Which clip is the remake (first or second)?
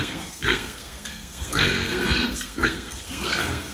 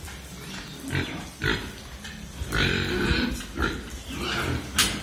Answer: first